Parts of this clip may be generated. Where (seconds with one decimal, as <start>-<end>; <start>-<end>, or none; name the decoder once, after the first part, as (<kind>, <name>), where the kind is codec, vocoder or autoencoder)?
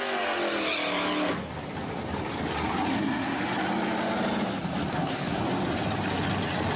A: 2.9-3.4 (codec, SNAC); 4.9-5.4